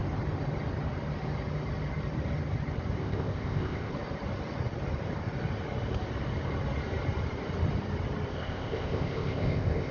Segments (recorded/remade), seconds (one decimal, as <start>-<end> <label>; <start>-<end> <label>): 0.0-3.0 recorded; 3.0-3.9 remade; 3.9-8.3 recorded; 8.3-9.9 remade